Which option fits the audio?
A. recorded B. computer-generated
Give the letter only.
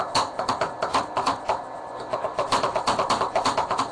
A